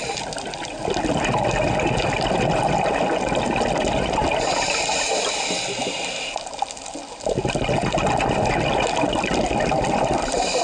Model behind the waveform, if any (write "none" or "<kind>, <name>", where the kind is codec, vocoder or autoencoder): none